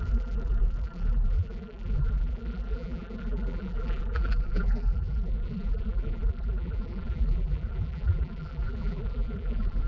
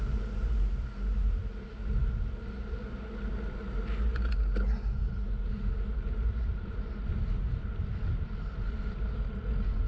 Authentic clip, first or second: second